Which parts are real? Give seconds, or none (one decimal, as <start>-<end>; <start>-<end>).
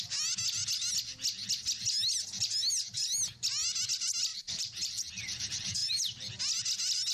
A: 0.0-4.3; 5.2-5.8; 6.4-7.1